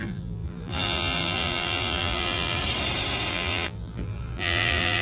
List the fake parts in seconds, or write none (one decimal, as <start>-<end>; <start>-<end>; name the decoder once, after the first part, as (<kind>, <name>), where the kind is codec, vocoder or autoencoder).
0.0-2.6 (vocoder, BigVGAN v2); 3.3-5.0